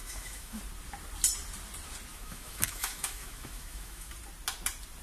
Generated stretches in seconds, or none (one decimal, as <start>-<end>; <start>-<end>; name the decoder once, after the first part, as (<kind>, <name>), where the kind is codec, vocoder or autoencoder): 0.0-0.6 (autoencoder, DAC-VAE); 2.1-4.1